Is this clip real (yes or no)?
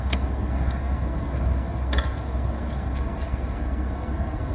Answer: no